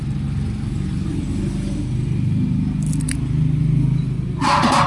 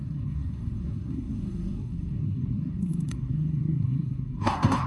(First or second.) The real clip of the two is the first